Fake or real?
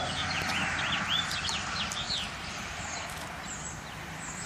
real